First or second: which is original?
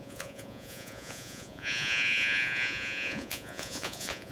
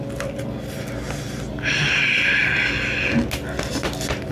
second